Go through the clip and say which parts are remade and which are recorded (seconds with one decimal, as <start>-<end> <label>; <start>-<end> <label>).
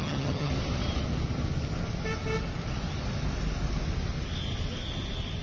0.0-0.5 remade; 0.5-5.4 recorded